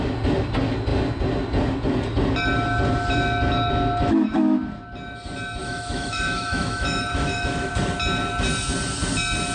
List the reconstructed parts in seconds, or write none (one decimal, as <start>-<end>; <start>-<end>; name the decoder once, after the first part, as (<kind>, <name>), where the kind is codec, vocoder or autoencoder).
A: 5.6-7.7 (autoencoder, DAC-VAE)